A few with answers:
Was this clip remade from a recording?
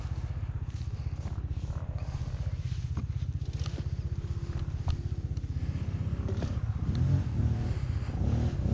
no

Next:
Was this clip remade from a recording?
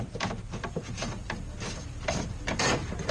yes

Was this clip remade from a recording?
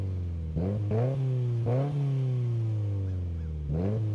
no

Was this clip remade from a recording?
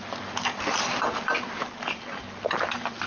no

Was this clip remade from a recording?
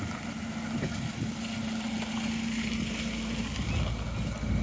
no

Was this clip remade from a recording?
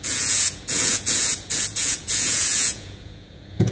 yes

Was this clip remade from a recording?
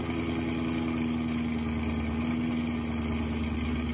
no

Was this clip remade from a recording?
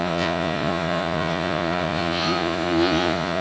yes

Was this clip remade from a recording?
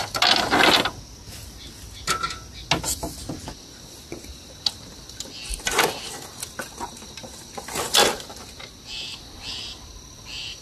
no